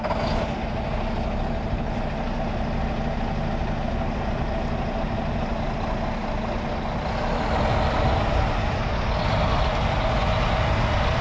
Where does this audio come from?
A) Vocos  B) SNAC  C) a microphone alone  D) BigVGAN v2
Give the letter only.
C